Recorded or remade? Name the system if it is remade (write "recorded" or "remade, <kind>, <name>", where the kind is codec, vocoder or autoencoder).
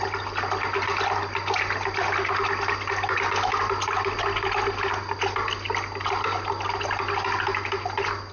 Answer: recorded